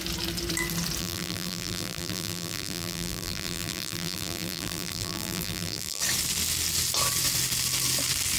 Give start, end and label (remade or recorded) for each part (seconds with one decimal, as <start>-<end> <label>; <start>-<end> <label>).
0.0-1.0 recorded; 1.0-6.0 remade; 6.0-8.4 recorded